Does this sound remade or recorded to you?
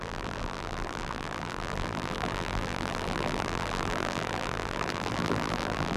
remade